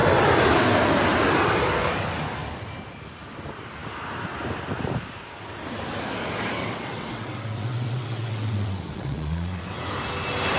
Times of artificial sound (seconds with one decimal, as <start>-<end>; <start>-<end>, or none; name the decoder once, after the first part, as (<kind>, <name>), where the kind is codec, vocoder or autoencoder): 6.6-9.9 (vocoder, WaveNeXt)